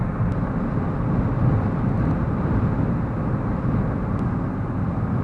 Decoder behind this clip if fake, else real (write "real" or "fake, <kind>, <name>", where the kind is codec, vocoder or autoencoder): real